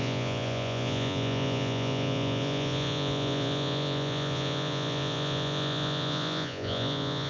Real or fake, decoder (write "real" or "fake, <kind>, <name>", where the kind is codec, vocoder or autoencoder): fake, vocoder, Vocos